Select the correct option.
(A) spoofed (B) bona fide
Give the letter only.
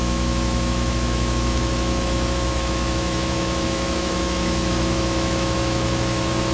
A